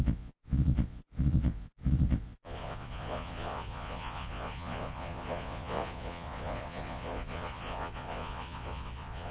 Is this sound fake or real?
fake